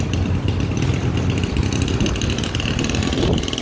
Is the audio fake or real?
real